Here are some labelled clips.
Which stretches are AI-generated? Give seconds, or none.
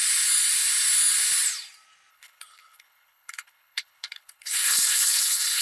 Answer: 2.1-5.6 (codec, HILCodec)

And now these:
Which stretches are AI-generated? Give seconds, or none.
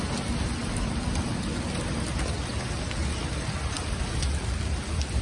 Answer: none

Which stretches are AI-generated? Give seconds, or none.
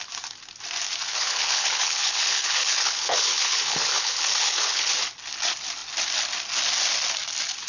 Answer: 1.1-4.9 (codec, HILCodec)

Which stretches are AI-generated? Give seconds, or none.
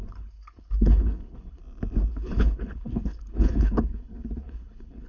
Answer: 0.0-1.6 (codec, HILCodec); 2.1-5.1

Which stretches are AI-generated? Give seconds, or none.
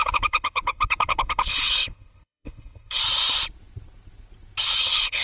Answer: 0.0-3.0 (codec, HILCodec); 4.8-5.2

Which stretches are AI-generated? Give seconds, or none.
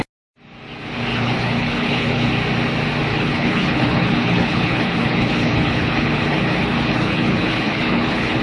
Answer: 1.1-2.3 (codec, HILCodec); 3.1-8.4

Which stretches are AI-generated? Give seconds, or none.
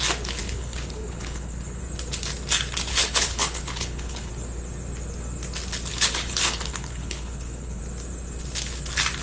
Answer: 0.4-1.8 (codec, HILCodec); 2.9-4.3; 5.9-7.8